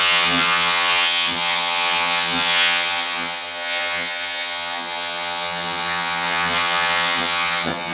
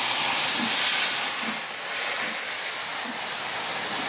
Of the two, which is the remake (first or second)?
first